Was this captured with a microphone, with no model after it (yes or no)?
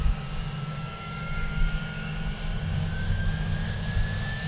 no